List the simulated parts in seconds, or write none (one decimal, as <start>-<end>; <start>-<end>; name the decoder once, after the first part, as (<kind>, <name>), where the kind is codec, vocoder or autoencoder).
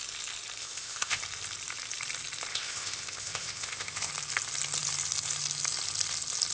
0.6-1.2 (codec, ZipCodec); 2.5-4.1